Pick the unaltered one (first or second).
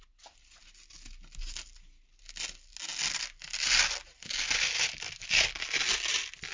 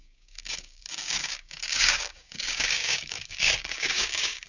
first